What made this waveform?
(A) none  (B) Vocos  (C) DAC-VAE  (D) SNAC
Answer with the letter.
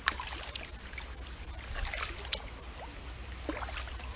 A